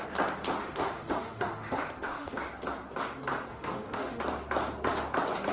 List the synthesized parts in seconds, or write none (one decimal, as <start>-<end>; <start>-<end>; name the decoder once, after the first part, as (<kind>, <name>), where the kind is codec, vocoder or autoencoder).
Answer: 0.6-2.4 (autoencoder, DAC-VAE); 3.5-4.2